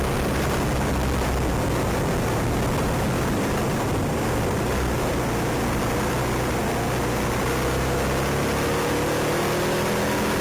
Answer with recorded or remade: recorded